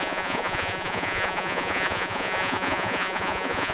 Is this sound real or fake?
fake